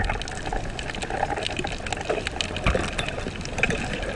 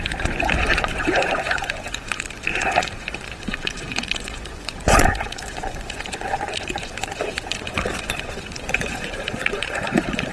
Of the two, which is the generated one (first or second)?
second